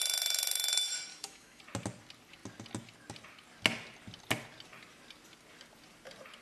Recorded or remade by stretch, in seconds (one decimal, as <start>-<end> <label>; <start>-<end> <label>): 0.0-1.1 recorded; 1.1-1.6 remade; 1.6-6.4 recorded